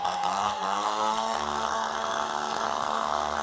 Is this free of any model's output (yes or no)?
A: no